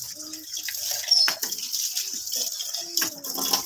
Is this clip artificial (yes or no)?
no